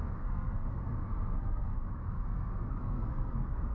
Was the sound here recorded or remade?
remade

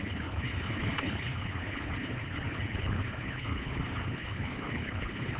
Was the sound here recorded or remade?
remade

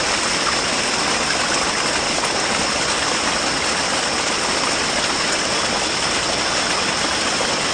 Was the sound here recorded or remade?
recorded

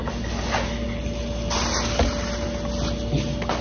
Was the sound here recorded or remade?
recorded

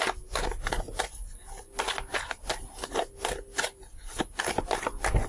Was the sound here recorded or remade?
recorded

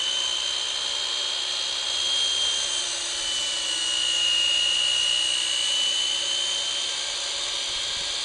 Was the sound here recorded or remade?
recorded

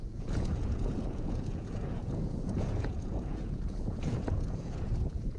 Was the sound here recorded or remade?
remade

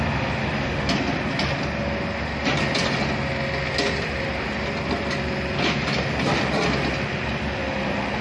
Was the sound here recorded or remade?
recorded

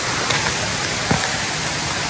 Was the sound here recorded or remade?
recorded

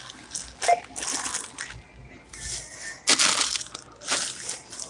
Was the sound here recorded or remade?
recorded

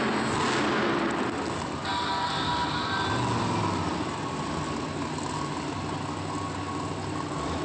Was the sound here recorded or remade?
recorded